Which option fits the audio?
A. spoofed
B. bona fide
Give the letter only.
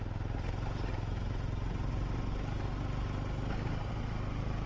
B